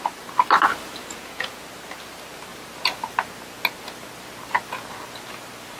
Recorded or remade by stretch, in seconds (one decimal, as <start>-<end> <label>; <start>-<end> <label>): 0.0-1.0 recorded; 1.0-1.6 remade; 1.6-5.8 recorded